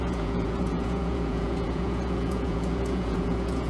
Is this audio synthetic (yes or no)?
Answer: yes